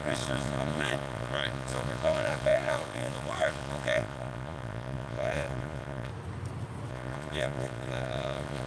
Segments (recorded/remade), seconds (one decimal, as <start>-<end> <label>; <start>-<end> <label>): 0.0-6.1 remade; 6.1-6.9 recorded; 6.9-8.7 remade